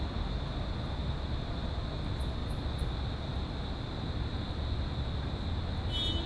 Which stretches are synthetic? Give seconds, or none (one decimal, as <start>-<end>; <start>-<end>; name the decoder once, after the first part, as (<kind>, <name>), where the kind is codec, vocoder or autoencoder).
none